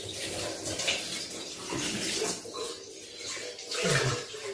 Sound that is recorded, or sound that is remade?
remade